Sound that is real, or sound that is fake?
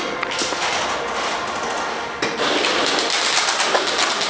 real